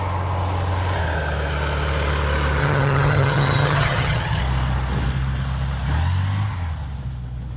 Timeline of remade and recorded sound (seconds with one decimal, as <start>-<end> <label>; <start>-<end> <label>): 0.0-2.6 recorded; 2.6-4.4 remade; 4.4-7.6 recorded